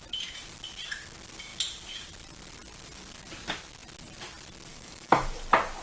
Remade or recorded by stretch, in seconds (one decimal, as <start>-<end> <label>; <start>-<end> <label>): 0.0-4.7 recorded; 4.7-5.3 remade; 5.3-5.8 recorded